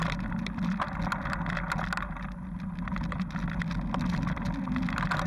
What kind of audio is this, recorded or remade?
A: recorded